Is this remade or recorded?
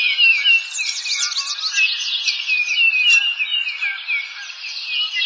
recorded